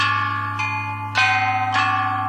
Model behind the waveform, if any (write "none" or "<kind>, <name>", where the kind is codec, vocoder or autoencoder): none